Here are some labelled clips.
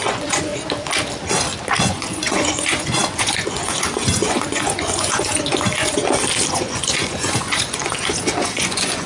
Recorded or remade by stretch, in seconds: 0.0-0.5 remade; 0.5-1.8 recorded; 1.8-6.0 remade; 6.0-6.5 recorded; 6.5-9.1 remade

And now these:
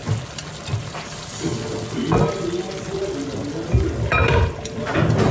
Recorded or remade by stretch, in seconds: 0.0-1.5 remade; 1.5-2.7 recorded; 2.7-5.3 remade